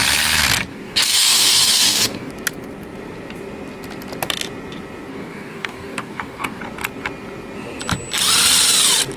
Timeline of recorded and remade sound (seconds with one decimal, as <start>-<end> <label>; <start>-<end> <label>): 0.0-0.7 recorded; 0.7-2.3 remade; 2.3-5.1 recorded; 5.1-6.6 remade; 6.6-9.2 recorded